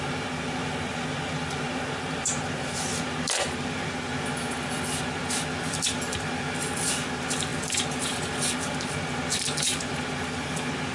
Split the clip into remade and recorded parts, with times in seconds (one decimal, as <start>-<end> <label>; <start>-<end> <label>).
0.0-10.9 remade